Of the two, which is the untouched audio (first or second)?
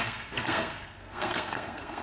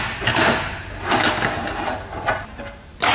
second